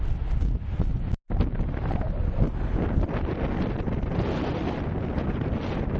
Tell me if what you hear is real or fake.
real